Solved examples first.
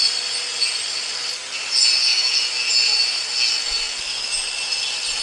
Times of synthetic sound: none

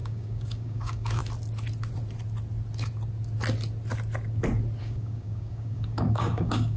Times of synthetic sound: 0.0-1.2 (codec, DAC); 4.8-6.8

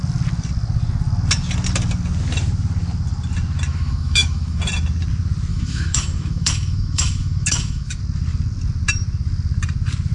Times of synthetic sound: 3.7-4.6 (autoencoder, DAC-VAE); 5.5-8.0